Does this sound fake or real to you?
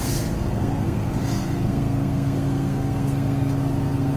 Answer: fake